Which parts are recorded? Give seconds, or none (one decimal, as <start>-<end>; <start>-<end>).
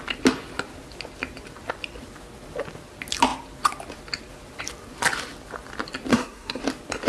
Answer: 0.0-6.1; 6.6-7.1